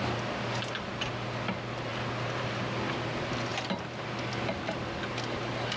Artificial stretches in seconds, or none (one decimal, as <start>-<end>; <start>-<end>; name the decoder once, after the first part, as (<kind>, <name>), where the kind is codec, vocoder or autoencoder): none